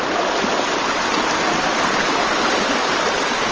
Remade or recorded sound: remade